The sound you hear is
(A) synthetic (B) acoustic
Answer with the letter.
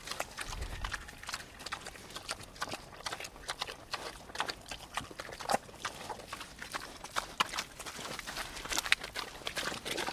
B